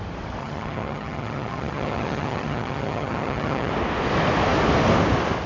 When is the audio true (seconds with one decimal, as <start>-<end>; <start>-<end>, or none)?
0.0-0.4; 3.7-5.5